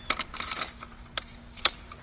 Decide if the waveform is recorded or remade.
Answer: recorded